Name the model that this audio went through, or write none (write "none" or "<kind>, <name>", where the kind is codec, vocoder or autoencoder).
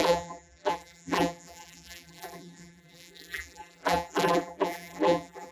vocoder, BigVGAN v2